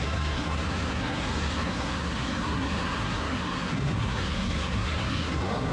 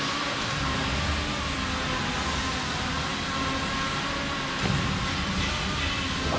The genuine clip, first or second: second